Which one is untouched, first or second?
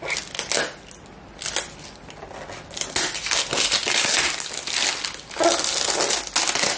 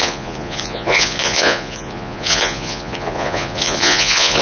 first